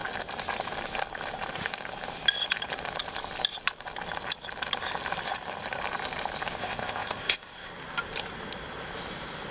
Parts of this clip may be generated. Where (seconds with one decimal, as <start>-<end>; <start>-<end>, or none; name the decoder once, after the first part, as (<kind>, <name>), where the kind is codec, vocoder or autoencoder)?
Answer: 6.6-7.7 (codec, ZipCodec)